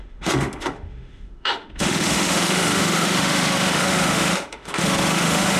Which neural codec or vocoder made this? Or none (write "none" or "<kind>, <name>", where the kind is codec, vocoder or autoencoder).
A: autoencoder, DAC-VAE